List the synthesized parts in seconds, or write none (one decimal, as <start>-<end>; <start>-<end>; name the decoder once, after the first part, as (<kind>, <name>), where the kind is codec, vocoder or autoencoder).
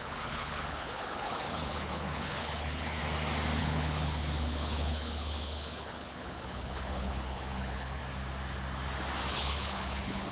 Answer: 0.0-3.0 (codec, HILCodec); 3.6-8.0; 9.3-10.3